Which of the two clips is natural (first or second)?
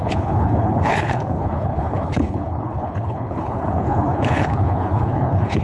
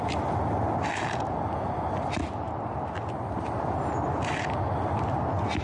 second